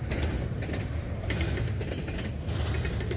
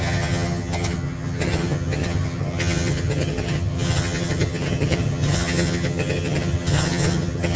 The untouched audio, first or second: first